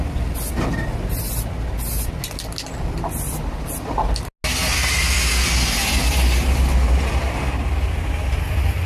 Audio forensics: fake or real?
real